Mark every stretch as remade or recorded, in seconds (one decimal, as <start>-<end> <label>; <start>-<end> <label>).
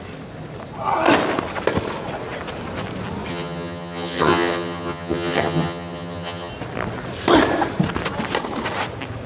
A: 0.0-3.3 recorded; 3.3-6.5 remade; 6.5-9.3 recorded